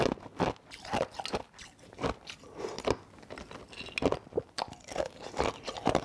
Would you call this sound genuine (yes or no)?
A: yes